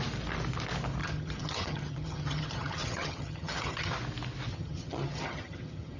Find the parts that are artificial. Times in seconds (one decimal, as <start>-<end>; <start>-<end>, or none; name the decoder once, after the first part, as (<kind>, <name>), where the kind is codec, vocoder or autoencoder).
1.0-3.9 (vocoder, HiFi-GAN); 4.5-6.0